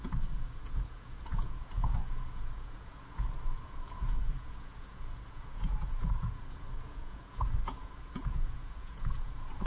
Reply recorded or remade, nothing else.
remade